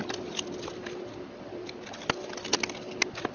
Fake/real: real